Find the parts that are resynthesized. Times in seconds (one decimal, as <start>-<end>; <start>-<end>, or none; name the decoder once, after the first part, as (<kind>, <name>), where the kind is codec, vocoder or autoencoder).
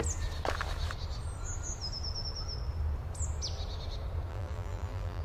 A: 4.3-5.2 (vocoder, BigVGAN v2)